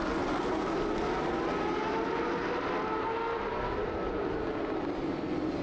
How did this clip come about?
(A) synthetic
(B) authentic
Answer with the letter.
B